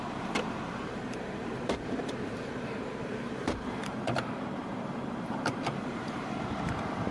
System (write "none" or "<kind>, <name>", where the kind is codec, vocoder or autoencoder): vocoder, BigVGAN v2